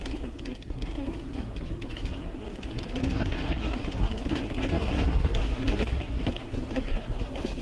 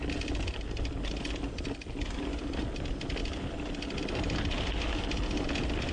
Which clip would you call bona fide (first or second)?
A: second